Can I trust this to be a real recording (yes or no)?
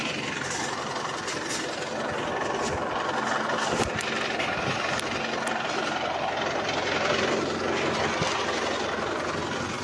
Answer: yes